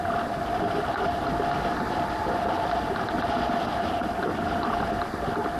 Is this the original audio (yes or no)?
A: no